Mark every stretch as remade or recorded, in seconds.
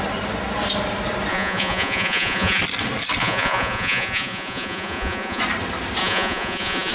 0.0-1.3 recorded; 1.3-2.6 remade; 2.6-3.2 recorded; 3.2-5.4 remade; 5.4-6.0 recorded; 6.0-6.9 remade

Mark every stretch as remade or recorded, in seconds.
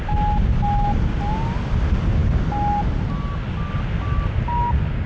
0.0-5.1 recorded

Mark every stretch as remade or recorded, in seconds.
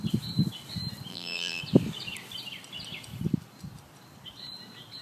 0.0-1.1 recorded; 1.1-1.6 remade; 1.6-5.0 recorded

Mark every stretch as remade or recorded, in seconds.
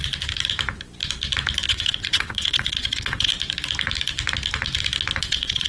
0.0-1.7 recorded; 1.7-3.3 remade; 3.3-5.2 recorded; 5.2-5.7 remade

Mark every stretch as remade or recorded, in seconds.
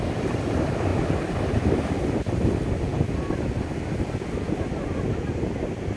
0.0-6.0 recorded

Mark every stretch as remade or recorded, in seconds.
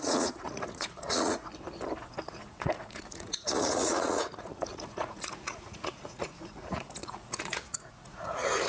0.0-1.5 remade; 1.5-2.3 recorded; 2.3-8.7 remade